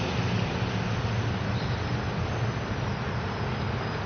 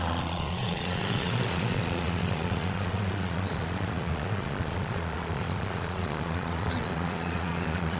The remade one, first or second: second